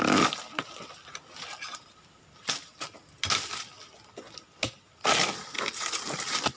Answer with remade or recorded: recorded